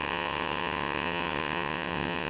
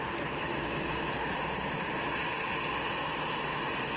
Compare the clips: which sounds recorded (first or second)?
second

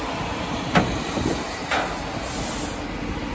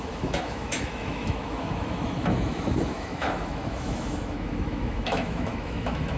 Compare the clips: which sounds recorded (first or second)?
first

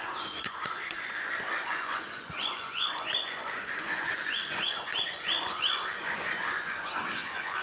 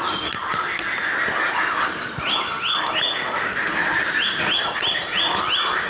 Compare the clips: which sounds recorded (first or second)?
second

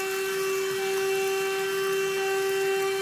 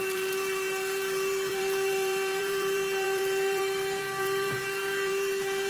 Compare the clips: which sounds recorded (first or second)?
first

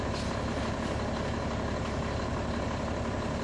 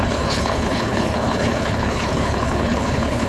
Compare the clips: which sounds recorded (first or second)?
first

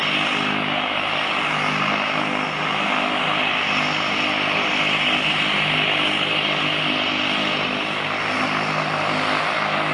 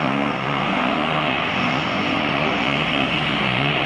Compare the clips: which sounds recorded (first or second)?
first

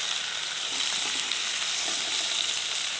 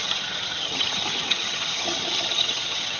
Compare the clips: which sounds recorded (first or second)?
first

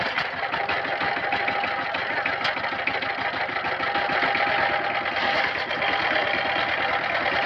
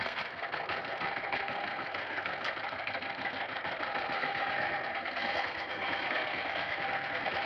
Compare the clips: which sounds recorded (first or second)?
first